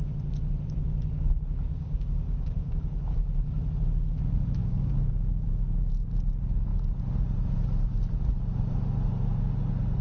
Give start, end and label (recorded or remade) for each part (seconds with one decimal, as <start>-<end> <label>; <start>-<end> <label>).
0.0-1.7 recorded; 1.7-2.9 remade; 2.9-4.6 recorded; 4.6-5.9 remade; 5.9-10.0 recorded